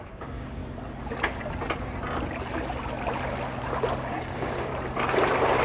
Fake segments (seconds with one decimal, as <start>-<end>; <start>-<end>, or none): 0.0-0.6; 4.0-4.7